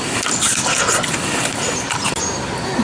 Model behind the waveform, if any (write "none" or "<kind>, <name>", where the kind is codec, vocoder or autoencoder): none